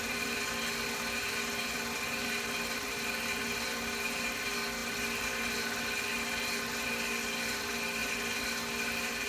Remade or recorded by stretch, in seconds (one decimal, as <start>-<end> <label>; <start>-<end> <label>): 0.0-9.3 recorded